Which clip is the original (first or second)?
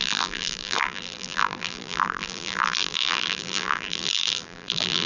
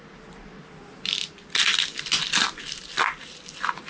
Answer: second